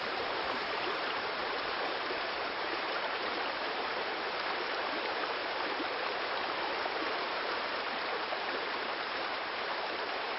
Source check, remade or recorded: remade